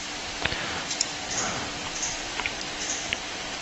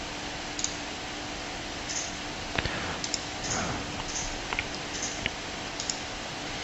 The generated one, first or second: first